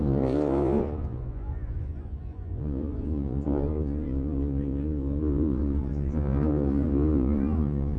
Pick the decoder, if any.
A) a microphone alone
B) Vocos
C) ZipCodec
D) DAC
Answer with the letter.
B